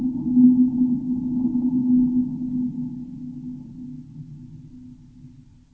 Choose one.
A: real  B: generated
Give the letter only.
A